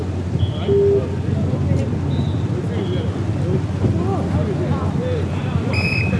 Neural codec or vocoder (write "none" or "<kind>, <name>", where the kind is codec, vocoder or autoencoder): none